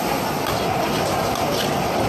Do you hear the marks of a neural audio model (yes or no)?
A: no